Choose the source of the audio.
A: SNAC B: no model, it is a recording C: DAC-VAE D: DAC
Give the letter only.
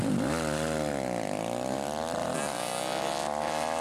B